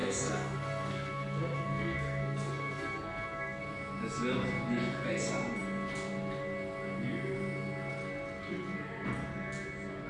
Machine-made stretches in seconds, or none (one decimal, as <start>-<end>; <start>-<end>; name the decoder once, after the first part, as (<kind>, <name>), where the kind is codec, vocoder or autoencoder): 0.0-3.6 (codec, SNAC)